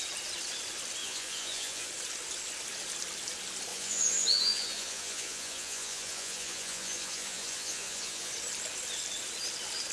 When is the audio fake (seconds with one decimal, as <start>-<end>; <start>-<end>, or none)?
1.0-1.9; 3.7-8.3